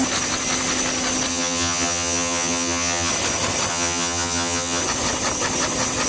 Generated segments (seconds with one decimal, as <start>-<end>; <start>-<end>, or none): 1.3-3.1; 3.7-4.8